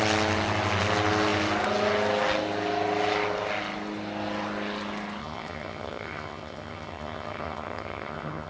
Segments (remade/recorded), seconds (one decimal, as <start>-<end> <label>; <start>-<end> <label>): 0.0-5.2 recorded; 5.2-8.5 remade